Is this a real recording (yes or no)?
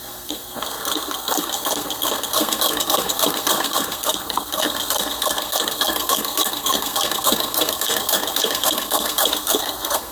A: no